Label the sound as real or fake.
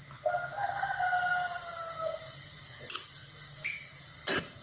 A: real